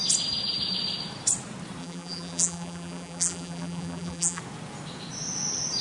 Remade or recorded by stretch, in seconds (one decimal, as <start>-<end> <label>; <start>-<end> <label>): 0.0-1.8 recorded; 1.8-4.4 remade; 4.4-5.8 recorded